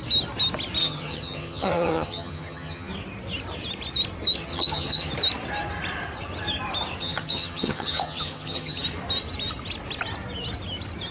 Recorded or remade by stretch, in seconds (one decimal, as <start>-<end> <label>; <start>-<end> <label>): 0.0-0.8 recorded; 0.8-2.9 remade; 2.9-4.5 recorded; 4.5-5.1 remade; 5.1-7.0 recorded; 7.0-8.8 remade; 8.8-11.1 recorded